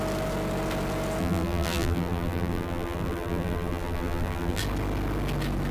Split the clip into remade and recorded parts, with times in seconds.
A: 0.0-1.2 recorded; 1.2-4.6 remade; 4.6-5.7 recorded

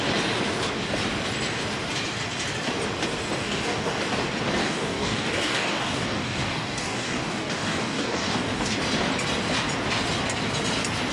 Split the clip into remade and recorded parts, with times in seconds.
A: 0.0-3.4 recorded; 3.4-4.0 remade; 4.0-4.6 recorded; 4.6-8.8 remade; 8.8-11.1 recorded